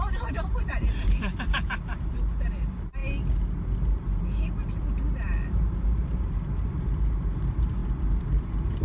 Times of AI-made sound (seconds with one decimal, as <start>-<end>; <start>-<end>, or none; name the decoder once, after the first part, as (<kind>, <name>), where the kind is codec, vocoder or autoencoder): 0.0-3.0 (vocoder, BigVGAN v2); 5.5-7.8; 8.4-8.8